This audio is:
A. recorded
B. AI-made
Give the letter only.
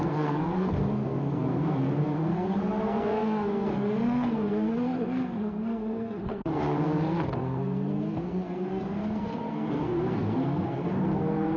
B